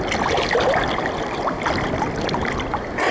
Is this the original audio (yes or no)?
yes